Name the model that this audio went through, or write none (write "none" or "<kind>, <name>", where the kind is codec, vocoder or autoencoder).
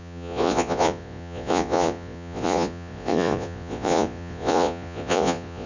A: vocoder, Vocos